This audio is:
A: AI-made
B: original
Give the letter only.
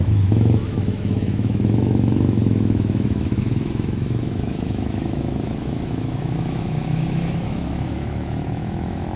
A